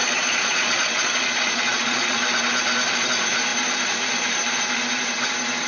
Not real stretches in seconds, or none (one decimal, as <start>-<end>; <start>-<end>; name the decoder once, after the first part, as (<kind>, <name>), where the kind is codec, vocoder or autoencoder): 0.0-2.2 (vocoder, Vocos)